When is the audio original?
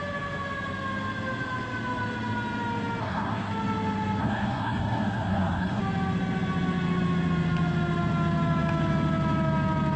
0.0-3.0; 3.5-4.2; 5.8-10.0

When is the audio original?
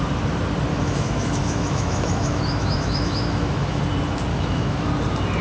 0.0-0.7; 3.8-4.3; 4.9-5.4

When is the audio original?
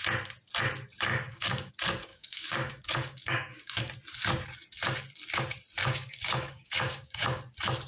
0.0-1.1; 1.7-2.1; 3.8-5.8; 7.4-7.9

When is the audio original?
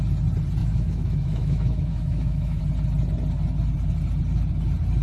0.0-0.6; 2.6-5.0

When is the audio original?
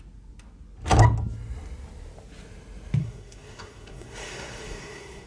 0.0-3.0